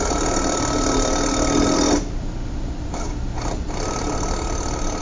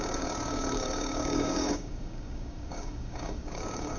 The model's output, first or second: second